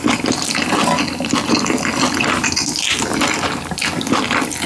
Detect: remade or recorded recorded